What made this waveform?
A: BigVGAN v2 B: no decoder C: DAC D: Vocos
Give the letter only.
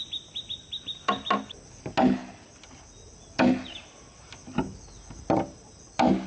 B